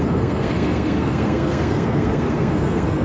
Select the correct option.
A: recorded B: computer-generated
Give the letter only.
B